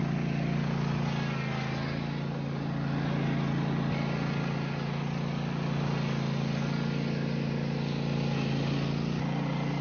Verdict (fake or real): real